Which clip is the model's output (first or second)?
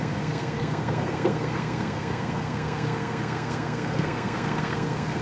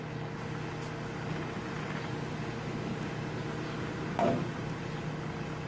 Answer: first